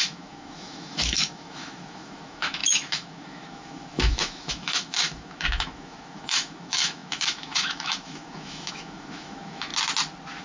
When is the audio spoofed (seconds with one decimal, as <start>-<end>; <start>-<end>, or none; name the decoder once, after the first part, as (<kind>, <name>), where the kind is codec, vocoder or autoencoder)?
0.0-9.7 (autoencoder, DAC-VAE)